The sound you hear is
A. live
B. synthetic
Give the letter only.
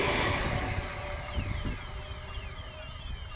A